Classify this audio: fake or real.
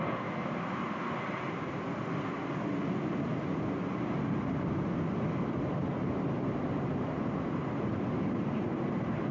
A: real